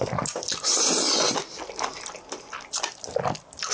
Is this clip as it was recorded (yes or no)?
yes